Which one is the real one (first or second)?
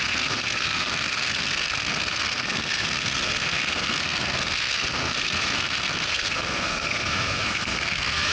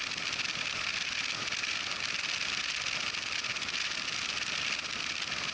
second